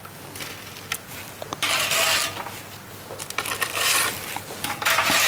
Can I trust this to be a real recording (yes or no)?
yes